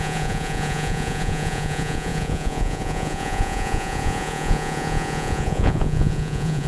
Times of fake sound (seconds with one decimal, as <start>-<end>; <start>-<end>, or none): 0.0-6.7